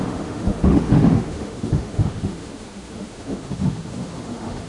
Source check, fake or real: fake